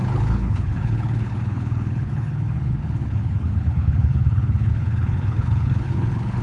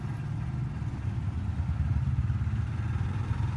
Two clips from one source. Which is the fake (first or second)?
first